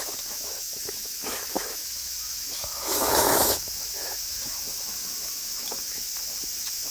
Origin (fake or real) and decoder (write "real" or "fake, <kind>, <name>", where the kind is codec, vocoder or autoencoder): fake, autoencoder, DAC-VAE